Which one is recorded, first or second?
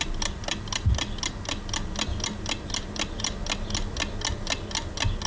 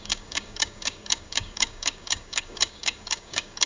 first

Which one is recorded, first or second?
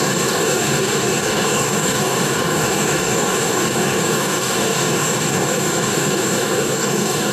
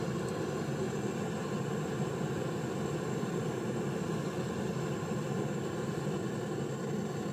second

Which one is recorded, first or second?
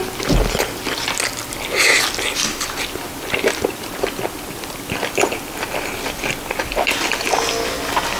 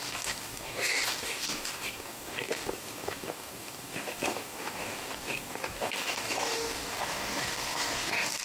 first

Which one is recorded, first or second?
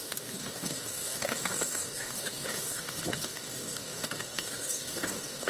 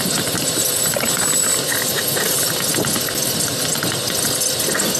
second